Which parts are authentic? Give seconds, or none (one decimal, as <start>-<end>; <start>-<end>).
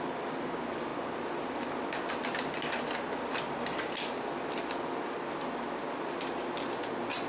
0.0-7.3